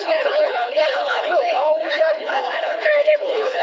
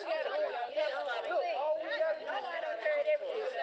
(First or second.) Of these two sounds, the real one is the second